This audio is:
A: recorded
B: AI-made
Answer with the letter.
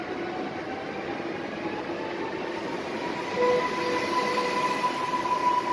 A